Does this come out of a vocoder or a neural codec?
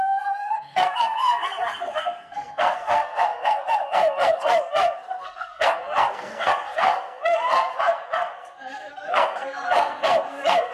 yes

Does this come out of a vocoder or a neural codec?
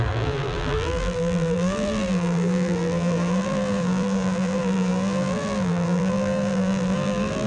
yes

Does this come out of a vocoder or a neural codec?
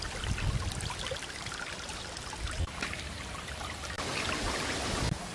no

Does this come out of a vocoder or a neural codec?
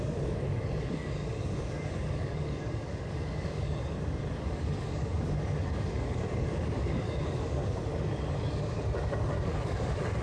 yes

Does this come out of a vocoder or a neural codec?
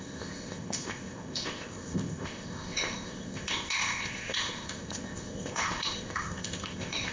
yes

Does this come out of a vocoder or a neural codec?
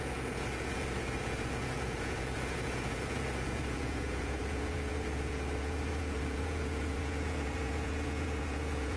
yes